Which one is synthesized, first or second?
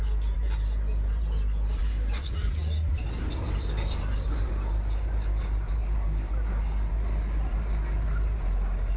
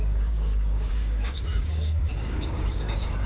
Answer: second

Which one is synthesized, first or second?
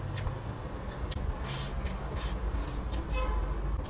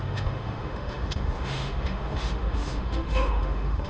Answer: second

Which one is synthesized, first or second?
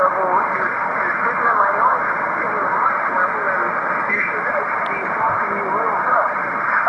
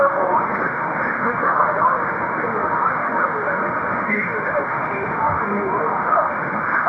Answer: second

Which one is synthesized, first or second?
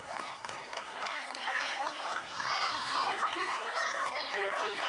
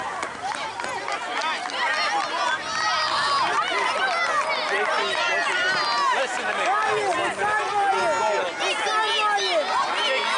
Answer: first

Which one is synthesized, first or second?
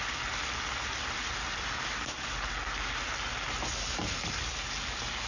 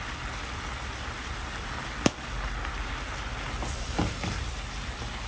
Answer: second